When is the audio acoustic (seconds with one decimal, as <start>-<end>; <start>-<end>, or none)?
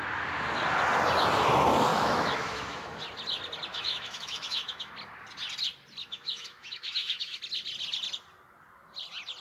0.0-1.9; 3.0-3.7; 4.9-6.0; 7.4-9.4